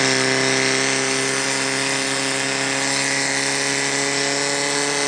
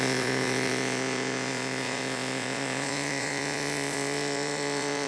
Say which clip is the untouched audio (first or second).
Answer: first